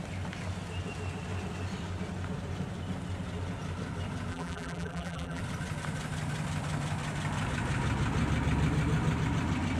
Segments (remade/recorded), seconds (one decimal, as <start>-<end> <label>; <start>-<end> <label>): 0.0-4.3 recorded; 4.3-5.4 remade; 5.4-9.8 recorded